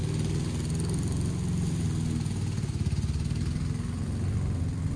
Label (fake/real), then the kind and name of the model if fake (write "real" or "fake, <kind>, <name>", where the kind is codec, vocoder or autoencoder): real